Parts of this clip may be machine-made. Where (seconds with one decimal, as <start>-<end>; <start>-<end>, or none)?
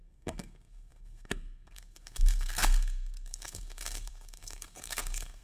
0.0-5.4